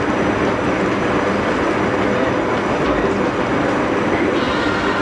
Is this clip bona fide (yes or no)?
yes